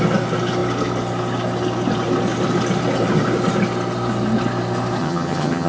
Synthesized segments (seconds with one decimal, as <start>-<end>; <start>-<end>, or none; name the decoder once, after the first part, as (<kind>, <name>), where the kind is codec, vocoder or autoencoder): 5.0-5.7 (vocoder, HiFi-GAN)